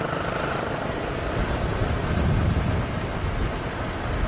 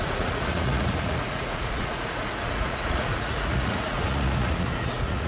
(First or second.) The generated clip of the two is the second